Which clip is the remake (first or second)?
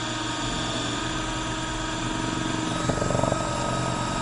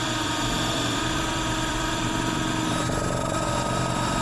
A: second